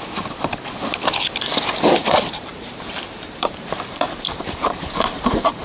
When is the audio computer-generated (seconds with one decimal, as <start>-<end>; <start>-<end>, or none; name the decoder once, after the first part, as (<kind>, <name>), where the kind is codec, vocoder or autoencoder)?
2.0-5.6 (vocoder, BigVGAN v2)